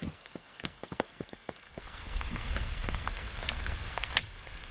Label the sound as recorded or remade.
remade